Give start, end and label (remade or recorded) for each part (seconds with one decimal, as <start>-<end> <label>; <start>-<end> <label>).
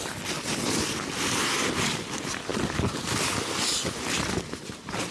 0.0-5.1 recorded